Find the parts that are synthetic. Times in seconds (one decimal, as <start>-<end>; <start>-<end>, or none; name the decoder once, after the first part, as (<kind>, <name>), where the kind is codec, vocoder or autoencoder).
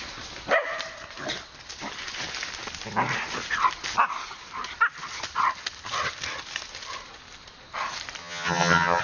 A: 8.2-9.0 (vocoder, HiFi-GAN)